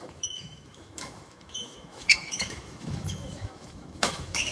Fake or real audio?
fake